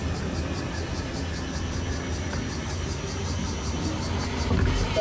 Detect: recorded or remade recorded